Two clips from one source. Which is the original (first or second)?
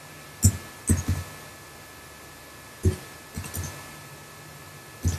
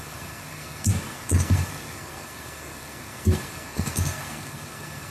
first